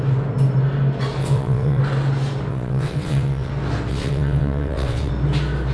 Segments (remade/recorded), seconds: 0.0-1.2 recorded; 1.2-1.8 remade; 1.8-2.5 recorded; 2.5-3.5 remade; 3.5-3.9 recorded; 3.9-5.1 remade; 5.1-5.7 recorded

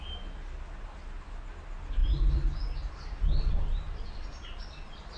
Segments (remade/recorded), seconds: 0.0-5.2 recorded

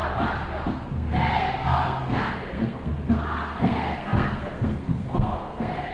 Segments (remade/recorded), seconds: 0.0-0.7 recorded; 0.7-5.9 remade

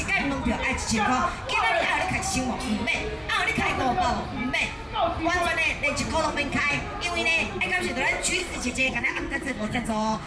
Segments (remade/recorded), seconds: 0.0-8.4 recorded; 8.4-10.3 remade

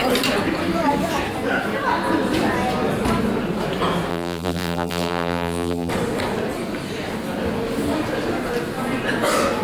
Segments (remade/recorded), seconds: 0.0-4.1 recorded; 4.1-5.9 remade; 5.9-9.6 recorded